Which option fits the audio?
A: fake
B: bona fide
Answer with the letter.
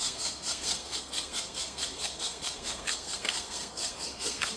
A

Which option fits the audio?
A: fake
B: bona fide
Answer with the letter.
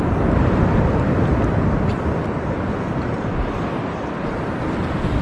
B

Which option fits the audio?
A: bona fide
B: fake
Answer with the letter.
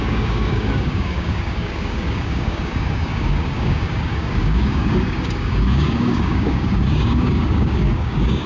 B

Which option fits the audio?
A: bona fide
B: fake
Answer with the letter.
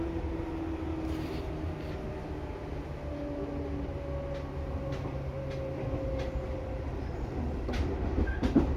A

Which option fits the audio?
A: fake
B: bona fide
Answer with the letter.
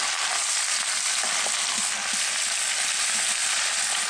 B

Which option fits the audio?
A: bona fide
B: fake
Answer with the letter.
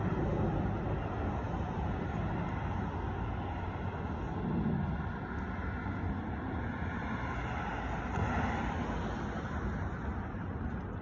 A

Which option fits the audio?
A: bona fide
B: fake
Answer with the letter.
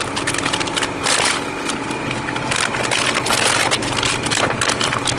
A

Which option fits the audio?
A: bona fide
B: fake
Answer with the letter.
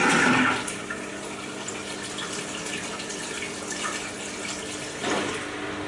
A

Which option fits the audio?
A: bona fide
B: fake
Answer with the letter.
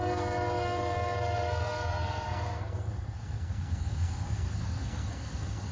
B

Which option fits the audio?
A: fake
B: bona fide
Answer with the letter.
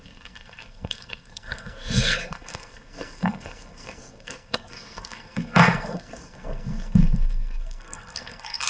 A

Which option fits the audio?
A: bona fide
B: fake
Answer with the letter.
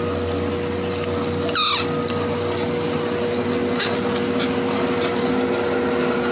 A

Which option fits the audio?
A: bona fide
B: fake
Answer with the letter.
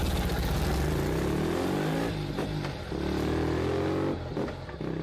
A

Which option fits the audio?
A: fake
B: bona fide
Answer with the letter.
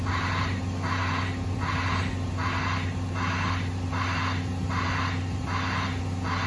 B